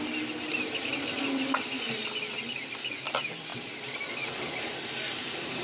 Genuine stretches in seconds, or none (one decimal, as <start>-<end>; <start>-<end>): 0.0-5.6